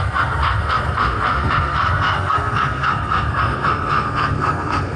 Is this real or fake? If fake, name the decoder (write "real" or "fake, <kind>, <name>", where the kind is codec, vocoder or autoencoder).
fake, codec, SNAC